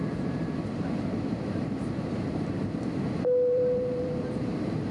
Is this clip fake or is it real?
fake